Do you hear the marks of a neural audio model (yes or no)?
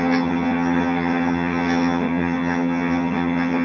yes